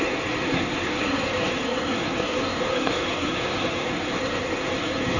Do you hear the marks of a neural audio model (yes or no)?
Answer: yes